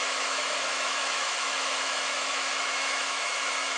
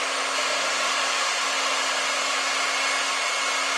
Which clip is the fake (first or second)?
first